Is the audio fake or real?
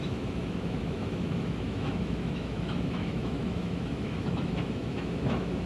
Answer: fake